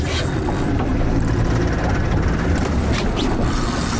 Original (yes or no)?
yes